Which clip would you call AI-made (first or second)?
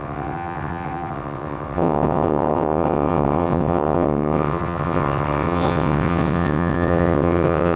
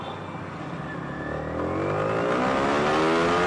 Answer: first